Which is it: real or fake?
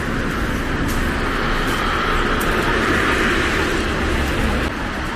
real